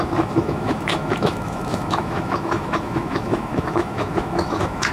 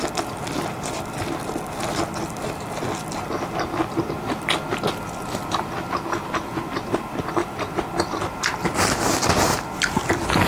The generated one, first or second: first